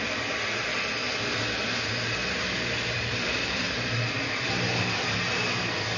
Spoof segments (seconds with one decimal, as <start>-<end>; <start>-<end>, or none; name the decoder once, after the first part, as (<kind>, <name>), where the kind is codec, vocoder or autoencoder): 2.2-4.8 (vocoder, BigVGAN v2)